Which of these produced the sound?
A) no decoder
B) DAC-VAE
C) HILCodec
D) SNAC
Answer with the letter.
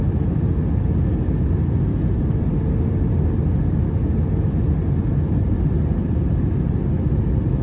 A